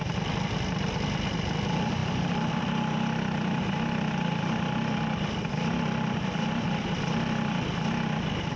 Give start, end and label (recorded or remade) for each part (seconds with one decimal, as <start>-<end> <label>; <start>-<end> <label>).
0.0-8.6 recorded